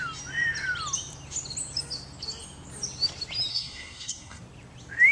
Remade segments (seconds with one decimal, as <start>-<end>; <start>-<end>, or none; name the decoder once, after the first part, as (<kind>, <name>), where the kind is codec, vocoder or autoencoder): 3.5-4.4 (codec, SNAC)